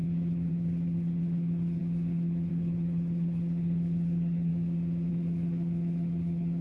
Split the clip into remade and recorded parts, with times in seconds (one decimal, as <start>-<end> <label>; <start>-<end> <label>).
0.0-4.5 remade; 4.5-5.1 recorded; 5.1-6.6 remade

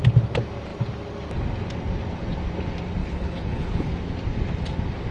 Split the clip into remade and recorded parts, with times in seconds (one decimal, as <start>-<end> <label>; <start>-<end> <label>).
0.0-3.0 recorded; 3.0-3.9 remade; 3.9-5.1 recorded

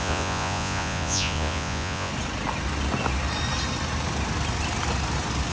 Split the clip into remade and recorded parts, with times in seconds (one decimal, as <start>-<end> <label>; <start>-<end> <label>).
0.0-2.1 remade; 2.1-5.5 recorded

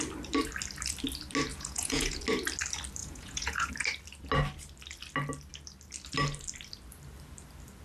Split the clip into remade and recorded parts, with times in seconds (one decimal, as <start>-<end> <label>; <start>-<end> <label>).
0.0-1.5 recorded; 1.5-2.2 remade; 2.2-3.0 recorded; 3.0-3.7 remade; 3.7-7.8 recorded

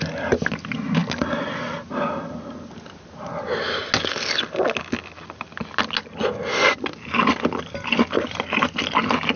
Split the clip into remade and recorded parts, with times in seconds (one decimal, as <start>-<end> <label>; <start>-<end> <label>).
0.0-9.4 recorded

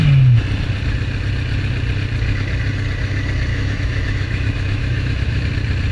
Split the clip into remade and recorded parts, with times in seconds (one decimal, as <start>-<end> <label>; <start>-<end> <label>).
0.0-3.5 recorded; 3.5-5.4 remade; 5.4-5.9 recorded

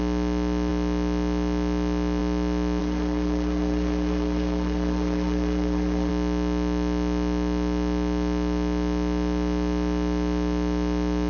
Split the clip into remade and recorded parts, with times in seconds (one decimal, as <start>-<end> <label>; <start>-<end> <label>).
0.0-2.8 recorded; 2.8-6.1 remade; 6.1-11.3 recorded